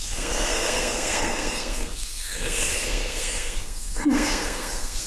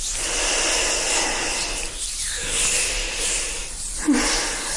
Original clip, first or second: second